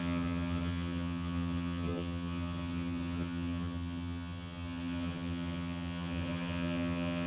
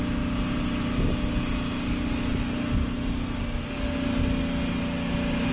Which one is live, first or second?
second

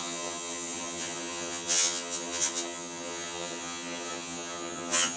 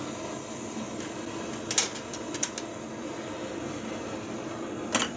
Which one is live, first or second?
second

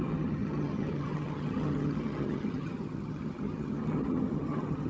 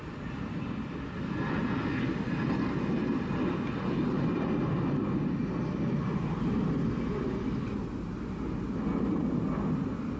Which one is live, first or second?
second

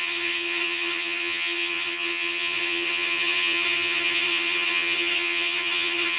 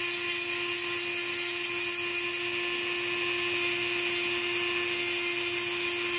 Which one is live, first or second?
second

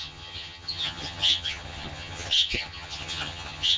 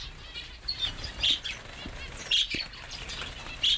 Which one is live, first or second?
second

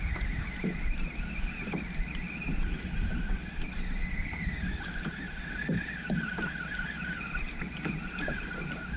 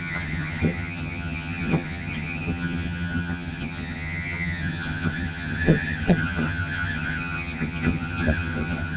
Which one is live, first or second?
first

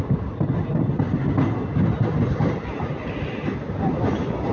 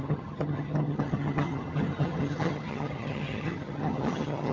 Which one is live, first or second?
first